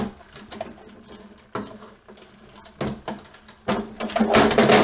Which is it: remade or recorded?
recorded